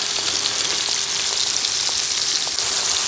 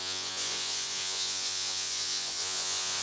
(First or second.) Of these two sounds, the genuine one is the first